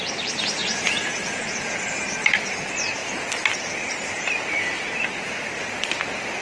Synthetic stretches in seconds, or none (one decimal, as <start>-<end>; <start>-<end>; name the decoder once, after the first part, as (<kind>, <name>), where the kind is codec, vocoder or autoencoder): 0.6-1.8 (vocoder, Vocos)